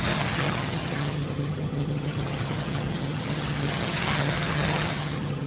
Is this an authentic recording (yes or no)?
no